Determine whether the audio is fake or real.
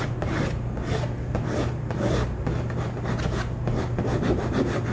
real